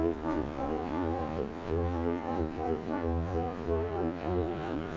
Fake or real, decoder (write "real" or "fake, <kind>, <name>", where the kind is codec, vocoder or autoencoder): fake, vocoder, Vocos